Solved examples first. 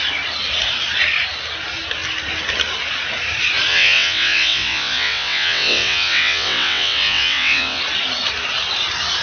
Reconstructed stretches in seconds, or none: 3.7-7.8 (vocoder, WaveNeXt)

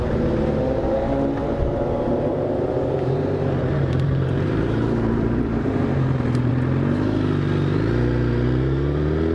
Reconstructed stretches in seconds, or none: 1.4-6.5 (vocoder, BigVGAN v2)

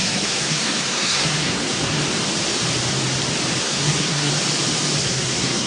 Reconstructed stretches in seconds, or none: 0.0-2.0 (codec, SNAC); 3.6-4.3; 5.0-5.7

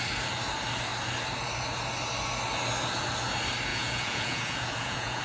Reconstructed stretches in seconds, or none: 3.7-5.2 (vocoder, Vocos)

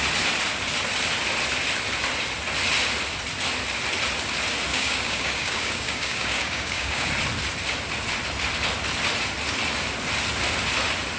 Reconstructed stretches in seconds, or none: 4.7-7.1 (codec, DAC)

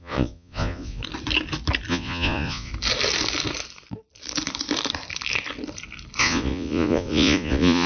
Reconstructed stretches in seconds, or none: 0.0-1.0 (vocoder, Vocos); 1.9-2.7; 6.2-7.9

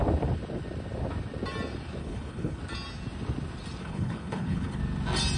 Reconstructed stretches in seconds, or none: 2.0-2.6 (codec, HILCodec); 3.8-4.8